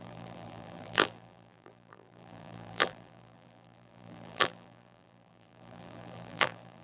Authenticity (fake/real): fake